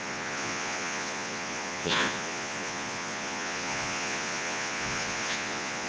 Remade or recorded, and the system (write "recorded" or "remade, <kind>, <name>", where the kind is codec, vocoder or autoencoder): remade, vocoder, Vocos